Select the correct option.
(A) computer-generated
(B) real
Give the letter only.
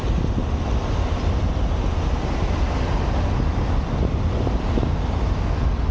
B